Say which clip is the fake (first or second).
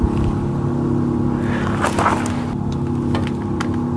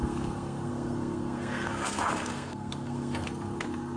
second